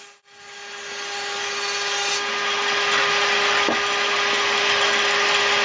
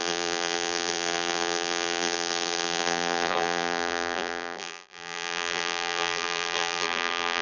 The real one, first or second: first